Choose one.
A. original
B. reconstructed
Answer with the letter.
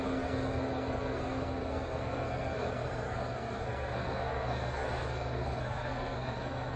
B